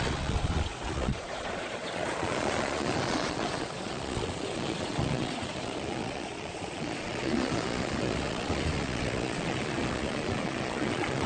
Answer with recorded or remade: remade